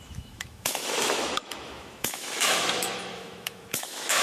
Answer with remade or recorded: remade